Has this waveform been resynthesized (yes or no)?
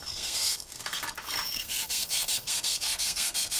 yes